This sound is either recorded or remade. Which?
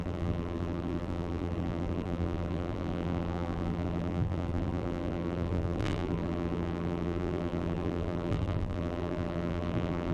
remade